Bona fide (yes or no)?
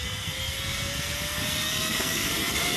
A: no